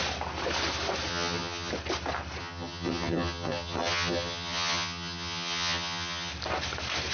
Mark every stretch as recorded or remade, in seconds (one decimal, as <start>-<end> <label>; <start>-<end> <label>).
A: 0.0-1.1 recorded; 1.1-1.7 remade; 1.7-2.4 recorded; 2.4-6.3 remade; 6.3-7.1 recorded